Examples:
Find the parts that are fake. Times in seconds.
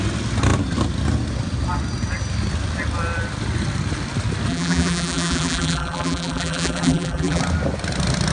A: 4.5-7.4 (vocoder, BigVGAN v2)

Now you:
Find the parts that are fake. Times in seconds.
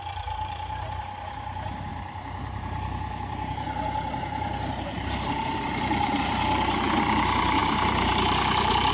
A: 0.0-8.9 (vocoder, BigVGAN v2)